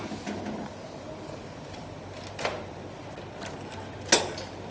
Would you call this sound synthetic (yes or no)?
no